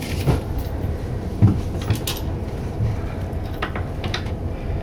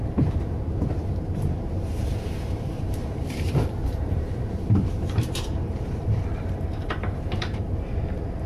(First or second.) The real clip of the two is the first